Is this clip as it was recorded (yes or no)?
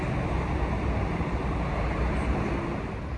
yes